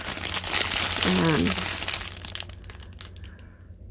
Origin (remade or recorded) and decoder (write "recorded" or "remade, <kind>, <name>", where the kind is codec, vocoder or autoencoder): recorded